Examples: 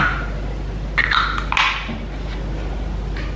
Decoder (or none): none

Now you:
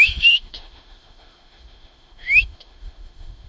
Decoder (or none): autoencoder, DAC-VAE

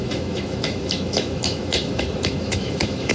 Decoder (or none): autoencoder, DAC-VAE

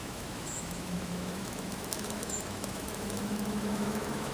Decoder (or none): autoencoder, DAC-VAE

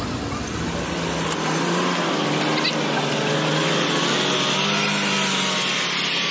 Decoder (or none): none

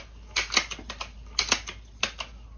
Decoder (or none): none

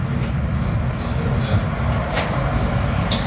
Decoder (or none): none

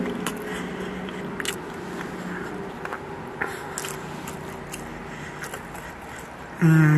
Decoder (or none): none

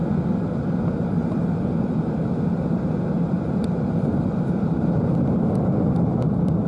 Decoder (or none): none